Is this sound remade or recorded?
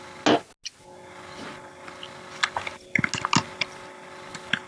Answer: recorded